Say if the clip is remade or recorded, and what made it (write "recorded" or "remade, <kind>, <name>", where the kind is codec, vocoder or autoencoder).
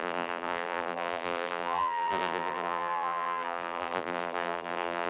remade, vocoder, BigVGAN v2